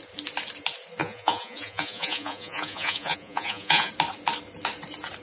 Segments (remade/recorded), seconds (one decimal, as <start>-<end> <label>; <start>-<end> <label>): 0.0-1.0 recorded; 1.0-3.9 remade; 3.9-5.2 recorded